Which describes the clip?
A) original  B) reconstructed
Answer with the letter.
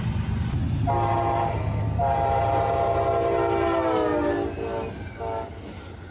A